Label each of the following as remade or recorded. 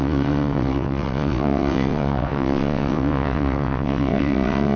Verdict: remade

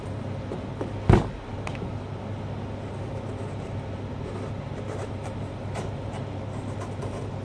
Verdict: recorded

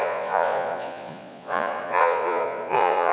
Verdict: remade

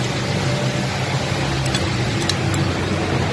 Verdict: recorded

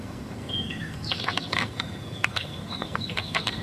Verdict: remade